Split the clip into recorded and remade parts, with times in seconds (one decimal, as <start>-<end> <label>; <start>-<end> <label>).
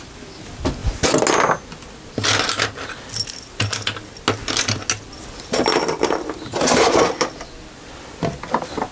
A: 0.0-8.9 recorded